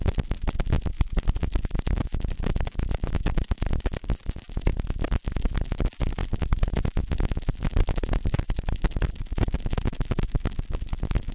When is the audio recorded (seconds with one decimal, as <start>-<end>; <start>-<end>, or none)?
0.0-11.3